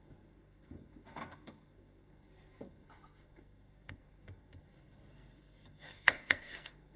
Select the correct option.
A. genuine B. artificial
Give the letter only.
B